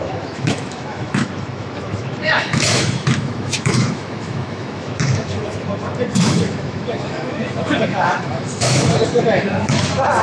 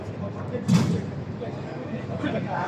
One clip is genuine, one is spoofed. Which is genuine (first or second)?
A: second